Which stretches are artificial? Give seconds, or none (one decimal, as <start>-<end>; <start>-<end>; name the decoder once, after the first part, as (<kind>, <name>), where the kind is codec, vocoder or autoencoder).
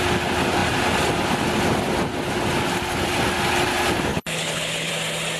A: 4.1-4.9 (codec, HILCodec)